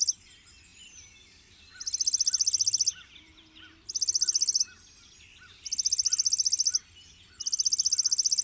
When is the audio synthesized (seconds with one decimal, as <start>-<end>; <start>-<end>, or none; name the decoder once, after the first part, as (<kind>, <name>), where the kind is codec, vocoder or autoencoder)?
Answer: none